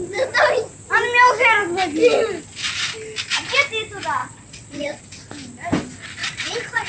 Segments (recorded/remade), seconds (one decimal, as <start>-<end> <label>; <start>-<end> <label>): 0.0-4.2 recorded; 4.2-5.0 remade; 5.0-6.2 recorded; 6.2-6.9 remade